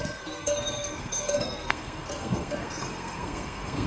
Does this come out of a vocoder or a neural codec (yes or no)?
yes